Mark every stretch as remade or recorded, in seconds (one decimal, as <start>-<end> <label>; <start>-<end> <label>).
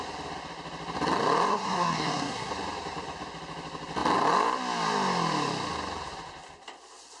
0.0-1.5 recorded; 1.5-2.5 remade; 2.5-7.2 recorded